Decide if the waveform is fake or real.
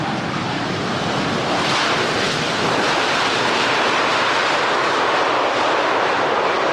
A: real